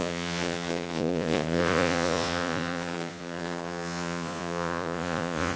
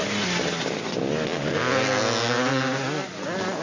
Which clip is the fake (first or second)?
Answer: first